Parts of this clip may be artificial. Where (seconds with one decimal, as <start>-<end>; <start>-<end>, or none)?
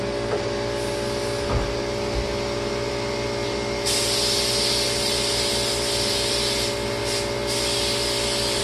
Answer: none